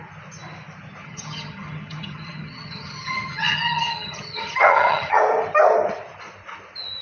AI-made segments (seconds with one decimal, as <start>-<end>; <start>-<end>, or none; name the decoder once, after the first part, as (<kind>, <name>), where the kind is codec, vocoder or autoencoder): 1.0-5.2 (vocoder, HiFi-GAN)